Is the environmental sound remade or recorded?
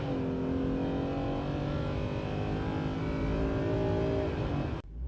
recorded